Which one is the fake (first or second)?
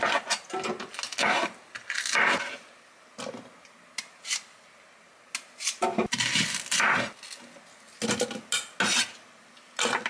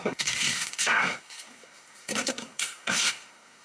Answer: second